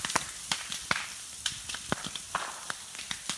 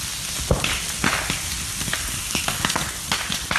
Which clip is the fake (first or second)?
first